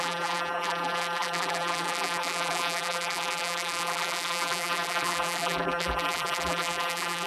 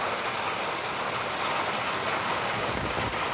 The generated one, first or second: first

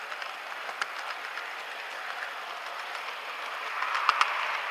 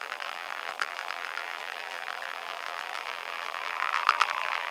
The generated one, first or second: second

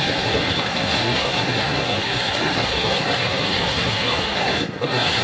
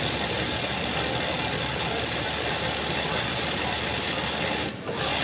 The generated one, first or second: first